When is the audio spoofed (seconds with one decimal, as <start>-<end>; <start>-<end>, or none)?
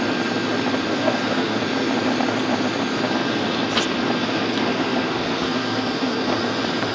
0.9-1.6; 4.2-6.4